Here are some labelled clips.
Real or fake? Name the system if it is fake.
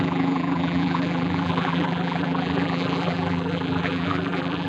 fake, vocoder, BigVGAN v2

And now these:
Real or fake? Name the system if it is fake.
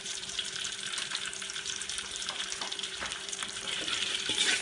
fake, vocoder, BigVGAN v2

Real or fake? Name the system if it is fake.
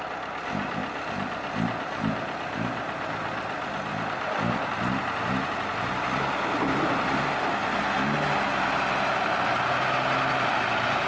real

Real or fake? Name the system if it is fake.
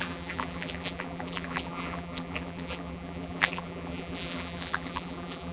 fake, vocoder, BigVGAN v2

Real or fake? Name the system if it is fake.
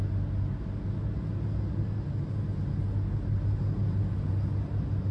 real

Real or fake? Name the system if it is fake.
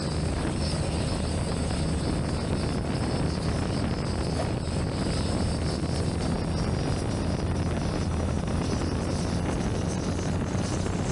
real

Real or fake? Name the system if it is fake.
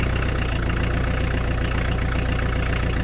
real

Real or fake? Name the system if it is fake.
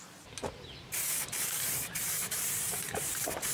fake, vocoder, BigVGAN v2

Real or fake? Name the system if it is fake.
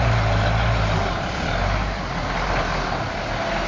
fake, vocoder, BigVGAN v2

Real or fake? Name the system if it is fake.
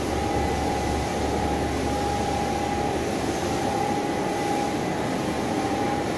real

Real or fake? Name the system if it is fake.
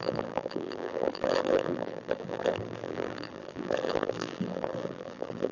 fake, vocoder, BigVGAN v2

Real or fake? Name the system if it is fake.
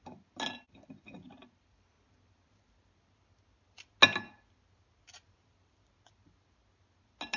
real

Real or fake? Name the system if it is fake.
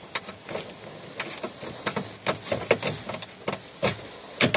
real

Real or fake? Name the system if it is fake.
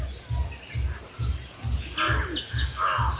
real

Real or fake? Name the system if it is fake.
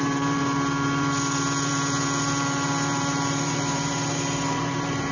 fake, vocoder, BigVGAN v2